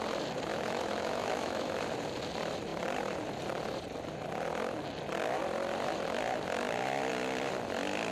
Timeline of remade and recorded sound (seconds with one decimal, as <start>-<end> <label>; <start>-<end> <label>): 0.0-0.5 recorded; 0.5-1.8 remade; 1.8-8.1 recorded